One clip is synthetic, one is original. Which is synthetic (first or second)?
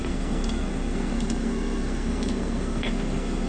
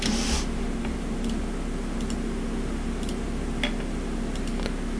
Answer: first